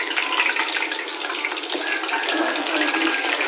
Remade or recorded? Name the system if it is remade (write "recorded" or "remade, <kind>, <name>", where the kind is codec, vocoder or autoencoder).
recorded